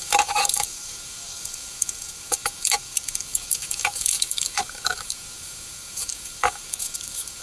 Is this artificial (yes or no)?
yes